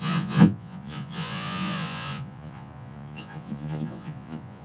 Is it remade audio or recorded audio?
remade